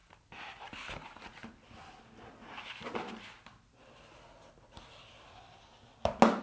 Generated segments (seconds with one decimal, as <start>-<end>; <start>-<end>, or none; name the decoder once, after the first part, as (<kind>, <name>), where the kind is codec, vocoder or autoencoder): none